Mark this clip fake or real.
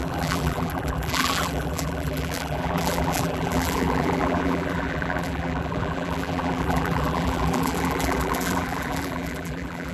fake